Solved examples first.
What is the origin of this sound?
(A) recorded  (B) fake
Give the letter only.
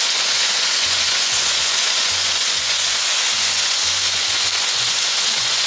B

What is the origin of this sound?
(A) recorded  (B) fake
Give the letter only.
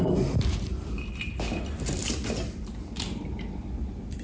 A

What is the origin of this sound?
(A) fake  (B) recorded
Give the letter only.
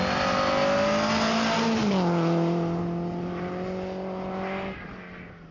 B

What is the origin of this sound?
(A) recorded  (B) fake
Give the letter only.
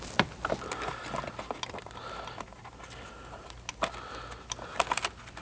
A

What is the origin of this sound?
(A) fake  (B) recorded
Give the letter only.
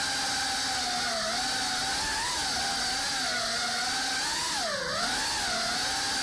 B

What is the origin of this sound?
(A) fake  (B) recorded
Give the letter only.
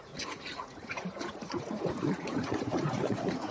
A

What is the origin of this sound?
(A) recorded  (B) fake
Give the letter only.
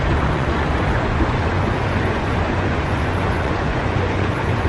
B